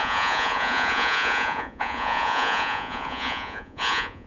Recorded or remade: remade